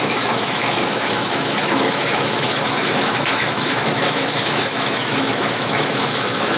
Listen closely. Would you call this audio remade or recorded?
remade